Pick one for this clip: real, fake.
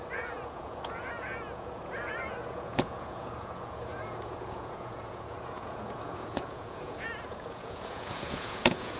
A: fake